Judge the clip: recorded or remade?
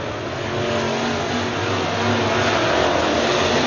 recorded